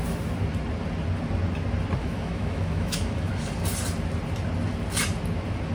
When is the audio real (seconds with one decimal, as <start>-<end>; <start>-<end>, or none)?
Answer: 0.0-2.0; 3.3-5.7